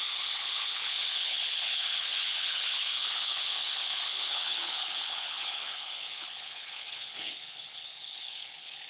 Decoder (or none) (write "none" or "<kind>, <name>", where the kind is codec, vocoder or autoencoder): codec, HILCodec